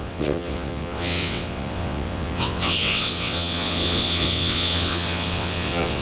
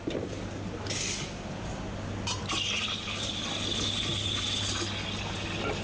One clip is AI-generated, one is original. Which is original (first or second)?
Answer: second